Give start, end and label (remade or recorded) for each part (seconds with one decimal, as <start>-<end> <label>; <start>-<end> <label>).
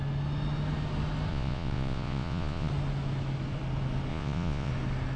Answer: 0.0-1.3 recorded; 1.3-2.7 remade; 2.7-4.1 recorded; 4.1-4.7 remade; 4.7-5.2 recorded